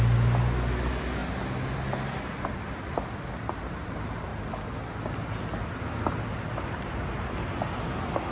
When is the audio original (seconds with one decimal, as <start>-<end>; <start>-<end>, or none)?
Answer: 0.0-8.3